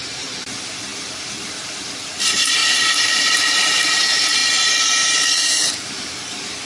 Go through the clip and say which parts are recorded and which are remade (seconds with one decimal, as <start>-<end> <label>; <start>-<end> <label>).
0.0-4.4 remade; 4.4-5.7 recorded; 5.7-6.7 remade